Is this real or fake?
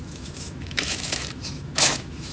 fake